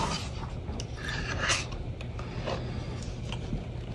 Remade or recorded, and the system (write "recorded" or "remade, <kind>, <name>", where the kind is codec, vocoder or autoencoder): recorded